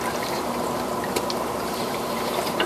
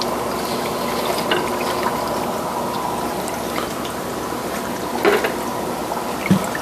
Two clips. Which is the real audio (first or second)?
second